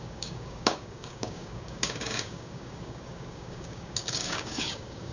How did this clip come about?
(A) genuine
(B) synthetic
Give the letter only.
B